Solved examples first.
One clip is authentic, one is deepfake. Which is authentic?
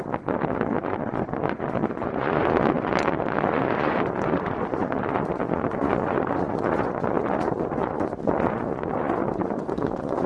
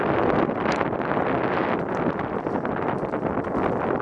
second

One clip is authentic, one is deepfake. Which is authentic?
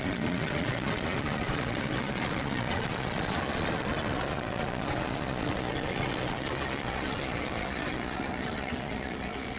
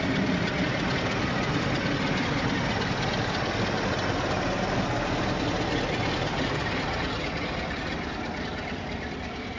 second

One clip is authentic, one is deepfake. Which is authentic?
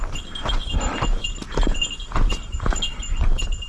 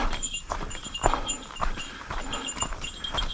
first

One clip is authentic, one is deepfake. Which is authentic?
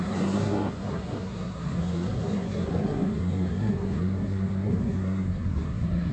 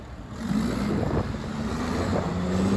second